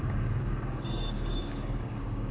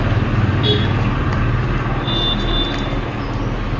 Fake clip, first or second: first